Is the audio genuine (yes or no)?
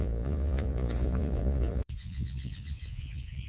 no